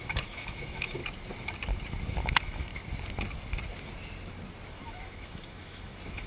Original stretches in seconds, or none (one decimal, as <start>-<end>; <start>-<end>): 1.0-2.2; 2.7-4.7